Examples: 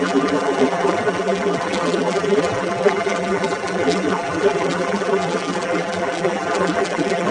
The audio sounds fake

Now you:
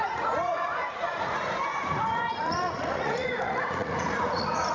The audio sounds fake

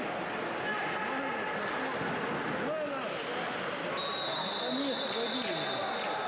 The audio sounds real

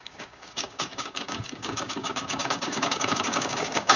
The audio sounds fake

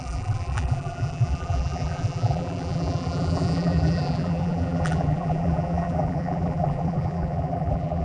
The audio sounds fake